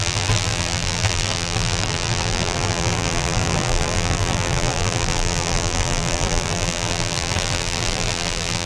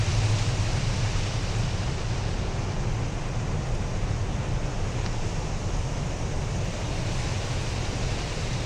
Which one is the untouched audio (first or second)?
second